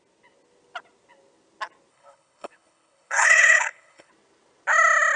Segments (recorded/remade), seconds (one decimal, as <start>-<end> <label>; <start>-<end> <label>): 0.0-1.9 recorded; 1.9-4.1 remade; 4.1-5.2 recorded